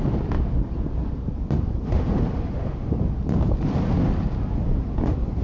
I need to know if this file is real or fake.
real